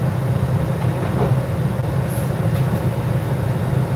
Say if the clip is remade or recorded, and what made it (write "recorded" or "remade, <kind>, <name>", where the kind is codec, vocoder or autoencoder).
recorded